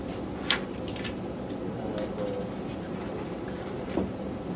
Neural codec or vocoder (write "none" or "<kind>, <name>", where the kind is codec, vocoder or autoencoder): none